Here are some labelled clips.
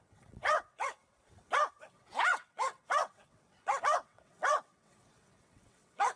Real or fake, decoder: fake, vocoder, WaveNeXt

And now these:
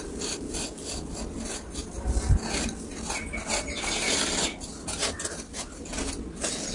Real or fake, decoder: real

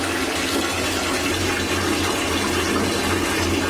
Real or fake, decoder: real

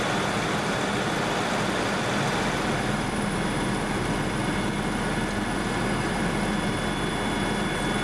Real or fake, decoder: real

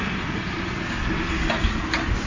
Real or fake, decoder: real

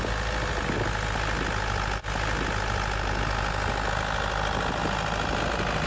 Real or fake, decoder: real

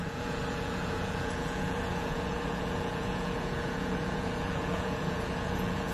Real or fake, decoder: fake, vocoder, Vocos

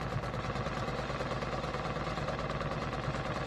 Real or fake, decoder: real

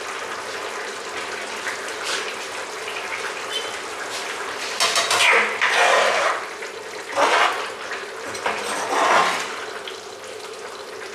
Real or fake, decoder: real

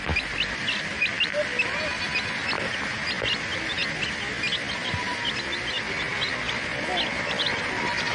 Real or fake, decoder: real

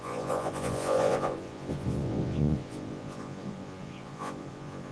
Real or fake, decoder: fake, vocoder, Vocos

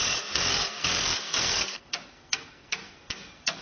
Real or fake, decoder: fake, codec, SNAC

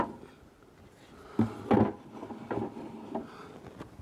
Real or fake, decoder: real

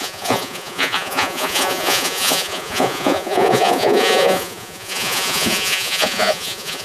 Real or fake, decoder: fake, vocoder, Vocos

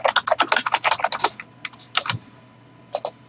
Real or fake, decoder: real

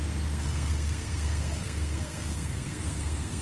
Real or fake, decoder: fake, codec, SNAC